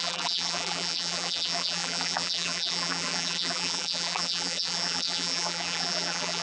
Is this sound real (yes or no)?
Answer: no